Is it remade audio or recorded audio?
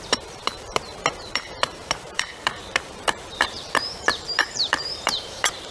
remade